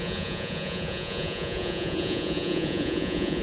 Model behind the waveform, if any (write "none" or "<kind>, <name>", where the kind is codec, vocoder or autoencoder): vocoder, Vocos